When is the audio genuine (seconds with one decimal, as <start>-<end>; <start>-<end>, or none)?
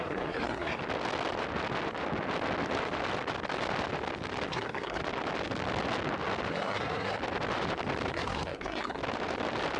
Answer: 0.8-4.5; 5.0-6.5; 7.2-8.1; 9.0-9.8